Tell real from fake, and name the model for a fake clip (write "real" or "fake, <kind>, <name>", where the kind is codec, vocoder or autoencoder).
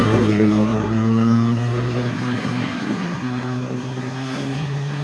fake, codec, SNAC